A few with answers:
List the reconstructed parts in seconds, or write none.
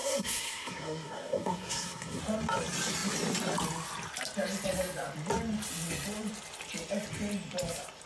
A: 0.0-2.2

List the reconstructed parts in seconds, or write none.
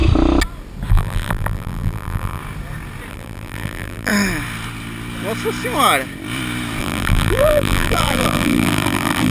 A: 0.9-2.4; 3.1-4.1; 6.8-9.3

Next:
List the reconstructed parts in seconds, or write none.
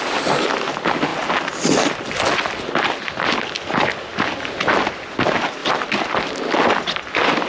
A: none